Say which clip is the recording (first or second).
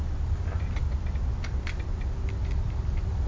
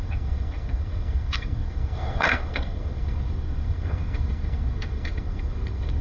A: first